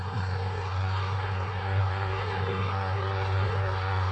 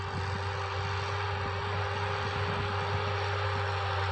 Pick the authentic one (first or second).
second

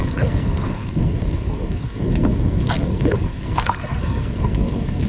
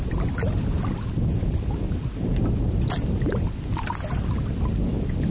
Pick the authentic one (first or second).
second